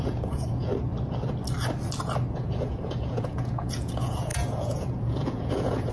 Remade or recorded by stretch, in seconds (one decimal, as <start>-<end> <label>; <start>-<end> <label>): 0.0-0.7 remade; 0.7-2.3 recorded; 2.3-5.9 remade